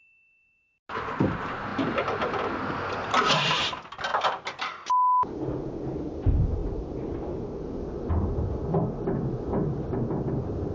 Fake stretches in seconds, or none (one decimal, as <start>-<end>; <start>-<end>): none